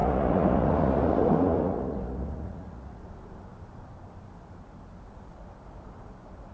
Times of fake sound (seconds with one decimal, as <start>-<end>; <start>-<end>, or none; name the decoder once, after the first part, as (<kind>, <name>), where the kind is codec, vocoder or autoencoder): 0.0-3.0 (vocoder, Vocos)